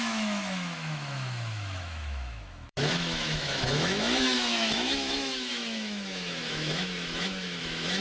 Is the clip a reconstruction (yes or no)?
yes